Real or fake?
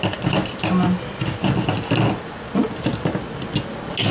real